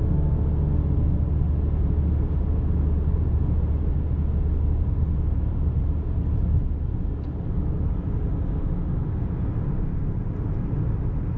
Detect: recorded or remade recorded